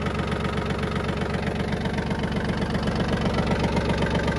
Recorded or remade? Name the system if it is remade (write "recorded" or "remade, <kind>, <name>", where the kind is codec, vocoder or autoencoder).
recorded